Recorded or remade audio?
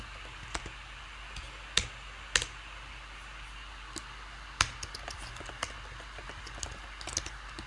recorded